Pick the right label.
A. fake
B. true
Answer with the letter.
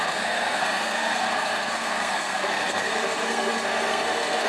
A